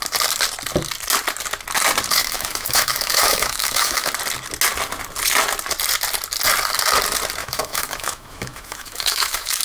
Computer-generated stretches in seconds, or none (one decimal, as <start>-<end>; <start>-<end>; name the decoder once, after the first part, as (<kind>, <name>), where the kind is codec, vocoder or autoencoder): 2.2-4.1 (autoencoder, DAC-VAE); 7.4-9.6